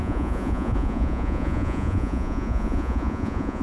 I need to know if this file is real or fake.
fake